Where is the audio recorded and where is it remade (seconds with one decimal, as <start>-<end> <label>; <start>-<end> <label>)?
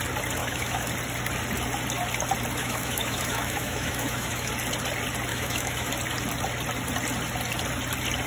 0.0-0.4 recorded; 0.4-0.9 remade; 0.9-2.6 recorded; 2.6-4.5 remade; 4.5-5.3 recorded; 5.3-5.9 remade; 5.9-8.3 recorded